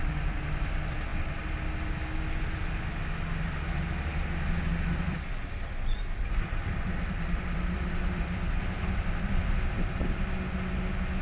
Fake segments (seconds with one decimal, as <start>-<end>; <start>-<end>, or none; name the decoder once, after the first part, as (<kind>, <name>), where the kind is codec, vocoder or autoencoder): 4.7-9.3 (vocoder, BigVGAN v2)